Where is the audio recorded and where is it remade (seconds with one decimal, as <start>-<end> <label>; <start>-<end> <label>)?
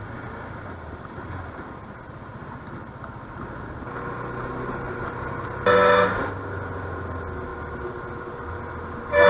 0.0-9.3 recorded